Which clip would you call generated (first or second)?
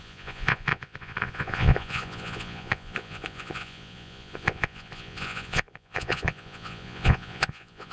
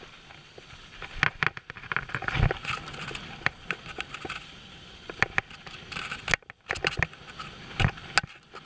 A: first